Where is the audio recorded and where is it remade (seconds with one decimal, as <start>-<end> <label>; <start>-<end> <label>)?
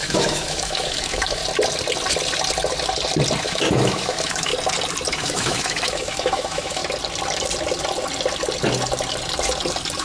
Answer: 0.0-1.4 remade; 1.4-3.4 recorded; 3.4-4.5 remade; 4.5-5.1 recorded; 5.1-6.8 remade; 6.8-10.0 recorded